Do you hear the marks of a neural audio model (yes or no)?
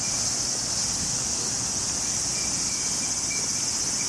no